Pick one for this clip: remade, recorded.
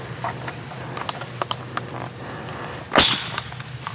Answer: recorded